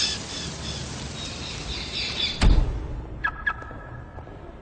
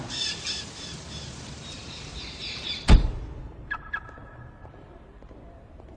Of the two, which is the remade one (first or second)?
second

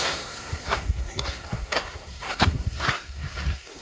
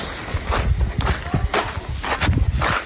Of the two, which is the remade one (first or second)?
first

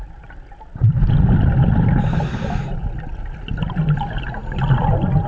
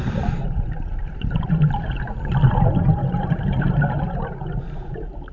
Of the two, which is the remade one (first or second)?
second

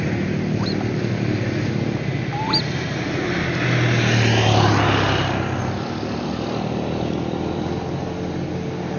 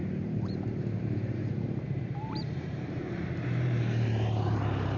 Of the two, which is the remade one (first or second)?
second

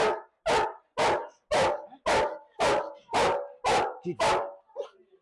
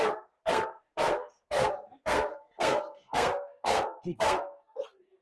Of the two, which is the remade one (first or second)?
second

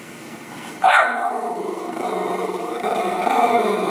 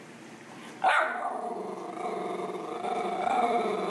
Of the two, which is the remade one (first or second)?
first